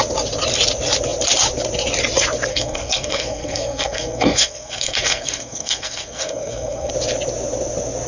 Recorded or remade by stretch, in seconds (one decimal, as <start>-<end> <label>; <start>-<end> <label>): 0.0-2.5 recorded; 2.5-6.9 remade; 6.9-8.1 recorded